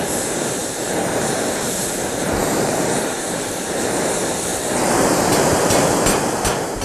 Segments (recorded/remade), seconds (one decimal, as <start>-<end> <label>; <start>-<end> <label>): 0.0-0.6 recorded; 0.6-1.8 remade; 1.8-2.4 recorded; 2.4-4.0 remade; 4.0-4.5 recorded; 4.5-6.0 remade; 6.0-6.8 recorded